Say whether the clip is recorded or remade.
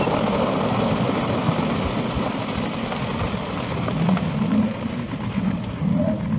recorded